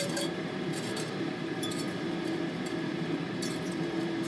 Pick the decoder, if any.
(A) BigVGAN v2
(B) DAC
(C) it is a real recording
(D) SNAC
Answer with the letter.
A